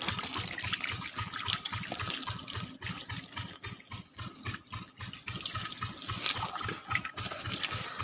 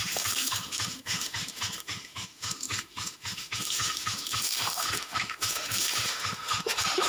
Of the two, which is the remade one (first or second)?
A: second